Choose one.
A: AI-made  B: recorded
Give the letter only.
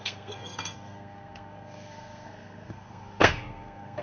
A